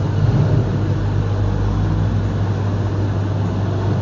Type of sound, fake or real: real